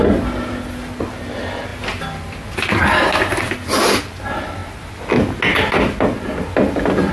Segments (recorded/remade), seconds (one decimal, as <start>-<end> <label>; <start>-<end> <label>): 0.0-7.1 recorded